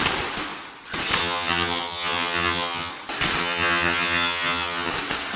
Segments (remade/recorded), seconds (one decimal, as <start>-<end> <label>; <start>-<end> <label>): 0.0-1.2 recorded; 1.2-2.9 remade; 2.9-3.4 recorded; 3.4-4.9 remade; 4.9-5.4 recorded